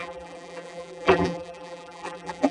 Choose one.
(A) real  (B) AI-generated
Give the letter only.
B